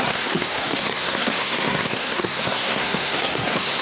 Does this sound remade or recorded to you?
remade